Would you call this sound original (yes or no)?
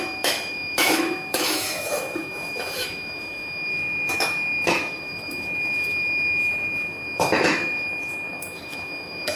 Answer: no